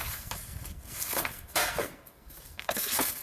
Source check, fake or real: fake